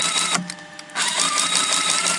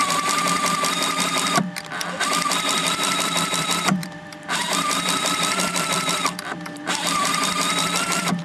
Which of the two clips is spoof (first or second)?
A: second